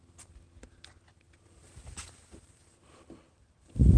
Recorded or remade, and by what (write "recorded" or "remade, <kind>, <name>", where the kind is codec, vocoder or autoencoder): recorded